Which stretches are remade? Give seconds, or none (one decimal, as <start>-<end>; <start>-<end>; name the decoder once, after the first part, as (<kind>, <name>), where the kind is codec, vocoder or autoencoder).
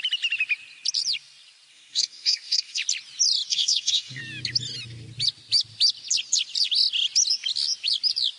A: 1.7-2.8 (codec, SNAC); 3.5-4.2